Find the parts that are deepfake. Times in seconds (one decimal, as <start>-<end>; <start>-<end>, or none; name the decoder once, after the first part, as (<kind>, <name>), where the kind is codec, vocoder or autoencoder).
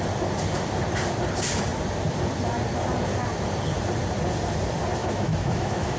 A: 5.0-6.0 (autoencoder, DAC-VAE)